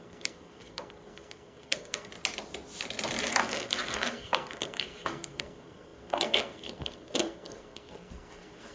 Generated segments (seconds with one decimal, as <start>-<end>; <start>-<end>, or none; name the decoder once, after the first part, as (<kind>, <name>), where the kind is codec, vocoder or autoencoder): 0.0-2.1 (codec, SNAC); 3.3-8.7